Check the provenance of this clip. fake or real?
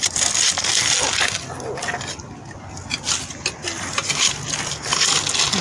real